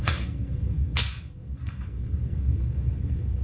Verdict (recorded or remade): remade